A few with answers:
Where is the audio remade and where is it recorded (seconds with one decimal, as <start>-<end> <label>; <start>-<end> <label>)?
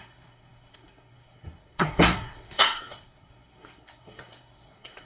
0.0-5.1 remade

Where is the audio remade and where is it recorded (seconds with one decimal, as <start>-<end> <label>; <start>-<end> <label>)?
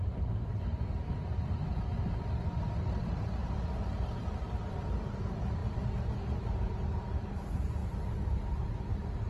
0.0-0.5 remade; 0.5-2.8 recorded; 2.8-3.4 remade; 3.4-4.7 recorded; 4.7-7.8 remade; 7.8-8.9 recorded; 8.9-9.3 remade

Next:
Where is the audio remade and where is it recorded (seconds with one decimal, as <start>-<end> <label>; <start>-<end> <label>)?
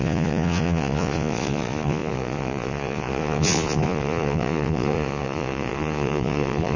0.0-6.8 remade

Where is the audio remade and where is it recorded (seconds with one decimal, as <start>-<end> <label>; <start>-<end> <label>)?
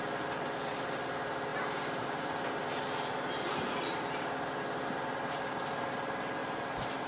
0.0-1.5 recorded; 1.5-4.6 remade; 4.6-6.4 recorded; 6.4-7.1 remade